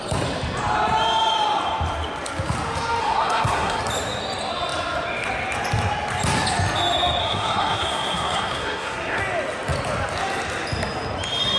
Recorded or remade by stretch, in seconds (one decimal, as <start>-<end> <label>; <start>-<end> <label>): 0.0-3.0 recorded; 3.0-3.8 remade; 3.8-7.2 recorded; 7.2-9.2 remade; 9.2-11.6 recorded

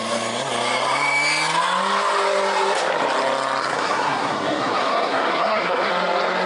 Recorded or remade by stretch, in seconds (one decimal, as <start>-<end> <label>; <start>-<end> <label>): 0.0-3.6 recorded; 3.6-5.9 remade; 5.9-6.5 recorded